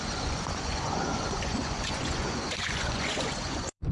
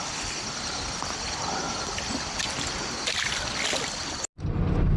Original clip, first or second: second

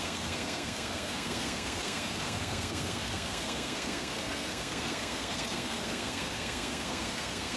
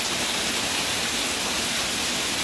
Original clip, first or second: second